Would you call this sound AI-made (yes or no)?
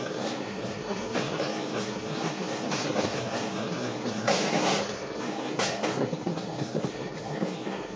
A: yes